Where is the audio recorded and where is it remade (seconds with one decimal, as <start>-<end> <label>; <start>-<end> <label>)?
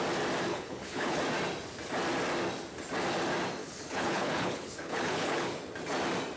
0.0-0.5 recorded; 0.5-1.2 remade; 1.2-3.6 recorded; 3.6-5.6 remade; 5.6-6.4 recorded